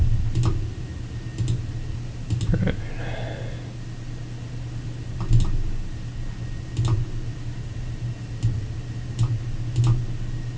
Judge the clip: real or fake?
real